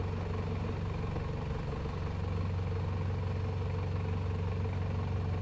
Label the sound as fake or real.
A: real